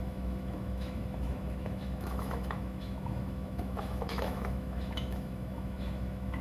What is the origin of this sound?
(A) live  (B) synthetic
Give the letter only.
B